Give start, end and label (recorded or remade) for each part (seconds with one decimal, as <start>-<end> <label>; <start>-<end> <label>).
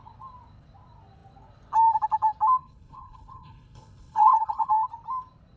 0.0-2.6 recorded; 2.6-4.7 remade; 4.7-5.6 recorded